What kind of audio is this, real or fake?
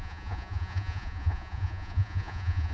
fake